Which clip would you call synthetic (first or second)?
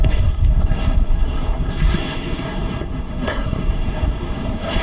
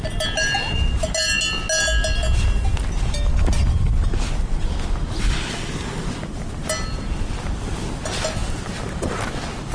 first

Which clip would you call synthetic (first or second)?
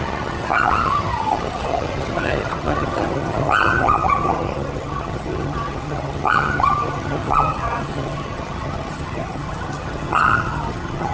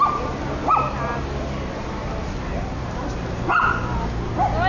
first